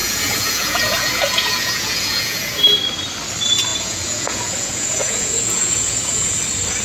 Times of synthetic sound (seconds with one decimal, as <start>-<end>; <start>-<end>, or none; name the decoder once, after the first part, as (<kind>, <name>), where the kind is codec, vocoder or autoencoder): 0.0-2.5 (vocoder, Vocos); 3.7-6.3